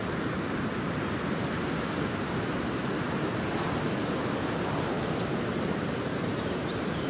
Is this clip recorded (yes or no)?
no